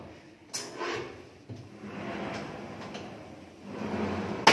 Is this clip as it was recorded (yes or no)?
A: yes